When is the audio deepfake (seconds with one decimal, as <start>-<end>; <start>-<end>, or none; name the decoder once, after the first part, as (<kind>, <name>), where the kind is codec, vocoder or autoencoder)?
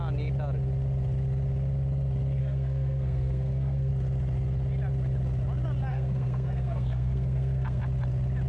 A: 2.4-3.9 (codec, SNAC); 5.9-7.8